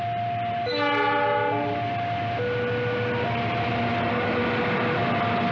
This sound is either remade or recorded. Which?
recorded